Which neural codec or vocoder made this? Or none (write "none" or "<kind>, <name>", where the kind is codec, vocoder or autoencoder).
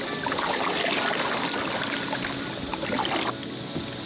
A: none